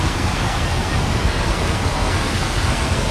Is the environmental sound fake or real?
fake